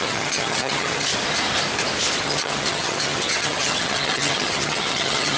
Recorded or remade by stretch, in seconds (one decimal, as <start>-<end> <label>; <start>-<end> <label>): 0.0-1.1 remade; 1.1-2.2 recorded; 2.2-5.4 remade